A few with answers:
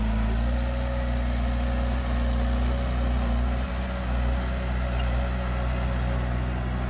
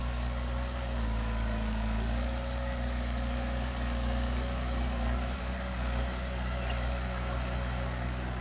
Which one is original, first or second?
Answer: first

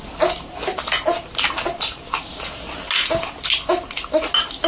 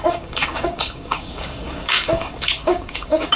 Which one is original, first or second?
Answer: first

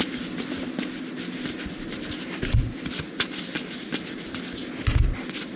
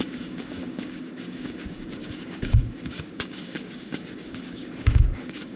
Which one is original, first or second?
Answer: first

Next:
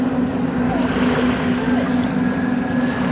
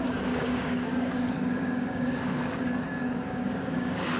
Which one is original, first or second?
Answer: first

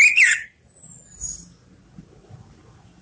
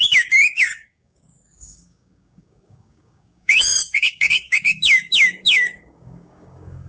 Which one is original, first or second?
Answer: first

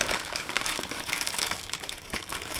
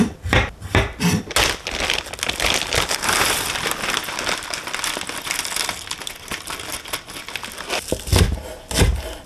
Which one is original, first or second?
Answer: second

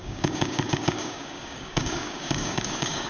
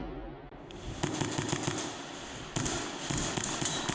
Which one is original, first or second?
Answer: second